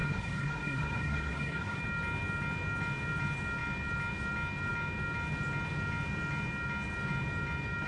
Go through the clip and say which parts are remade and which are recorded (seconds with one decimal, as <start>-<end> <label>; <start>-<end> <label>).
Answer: 0.0-1.8 remade; 1.8-7.9 recorded